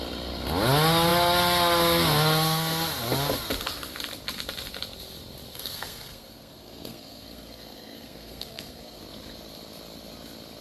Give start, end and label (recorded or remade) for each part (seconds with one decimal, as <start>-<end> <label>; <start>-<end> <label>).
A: 0.0-5.5 recorded; 5.5-9.0 remade; 9.0-10.6 recorded